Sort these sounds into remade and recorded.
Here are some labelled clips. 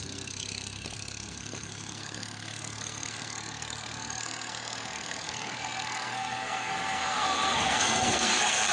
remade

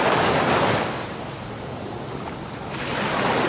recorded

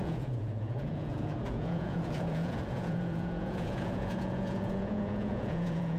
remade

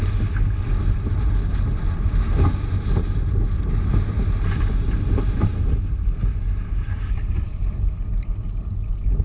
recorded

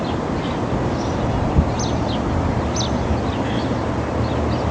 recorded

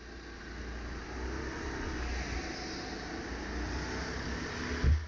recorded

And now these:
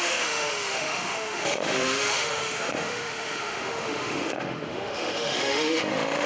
remade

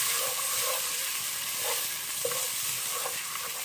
recorded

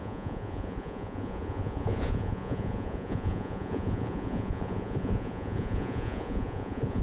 remade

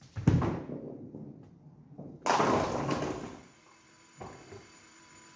recorded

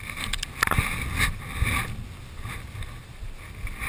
recorded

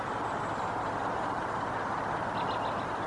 recorded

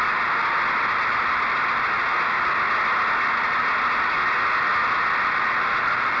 recorded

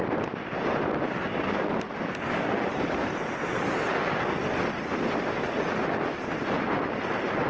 recorded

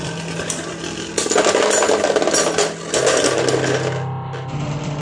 recorded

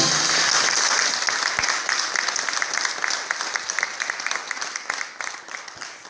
recorded